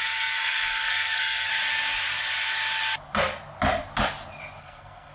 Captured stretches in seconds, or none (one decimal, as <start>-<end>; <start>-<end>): 1.5-4.6